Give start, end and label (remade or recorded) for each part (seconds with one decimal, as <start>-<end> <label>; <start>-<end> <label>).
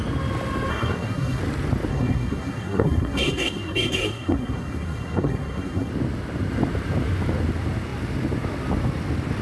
0.0-0.7 recorded; 0.7-1.4 remade; 1.4-1.9 recorded; 1.9-5.9 remade; 5.9-9.4 recorded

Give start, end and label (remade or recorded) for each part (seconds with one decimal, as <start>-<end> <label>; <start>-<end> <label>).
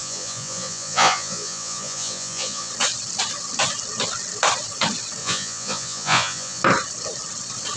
0.0-2.7 remade; 2.7-5.2 recorded; 5.2-6.6 remade; 6.6-7.8 recorded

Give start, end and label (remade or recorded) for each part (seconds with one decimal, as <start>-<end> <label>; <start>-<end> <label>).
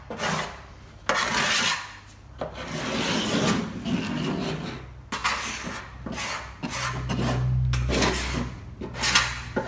0.0-9.7 recorded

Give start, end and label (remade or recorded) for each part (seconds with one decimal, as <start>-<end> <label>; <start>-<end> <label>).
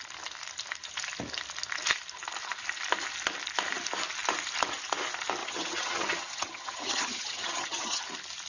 0.0-5.4 recorded; 5.4-8.0 remade; 8.0-8.5 recorded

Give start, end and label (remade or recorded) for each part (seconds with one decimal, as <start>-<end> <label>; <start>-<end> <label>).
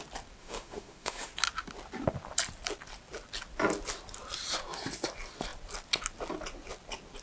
0.0-0.4 recorded; 0.4-1.3 remade; 1.3-7.2 recorded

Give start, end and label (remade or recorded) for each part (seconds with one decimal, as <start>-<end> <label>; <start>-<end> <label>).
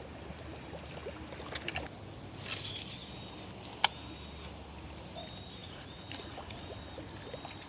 0.0-5.6 recorded; 5.6-6.8 remade; 6.8-7.7 recorded